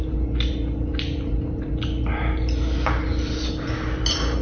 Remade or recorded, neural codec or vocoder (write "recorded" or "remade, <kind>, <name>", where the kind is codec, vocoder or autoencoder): recorded